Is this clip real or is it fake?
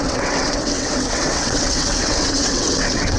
fake